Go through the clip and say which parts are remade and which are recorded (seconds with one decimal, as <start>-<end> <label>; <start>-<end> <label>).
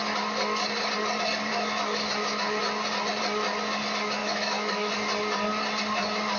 0.0-1.5 recorded; 1.5-2.1 remade; 2.1-4.2 recorded; 4.2-4.9 remade; 4.9-6.4 recorded